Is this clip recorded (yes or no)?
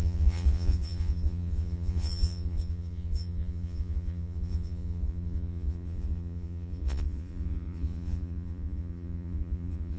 no